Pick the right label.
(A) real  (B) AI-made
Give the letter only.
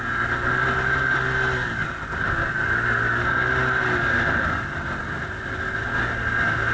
A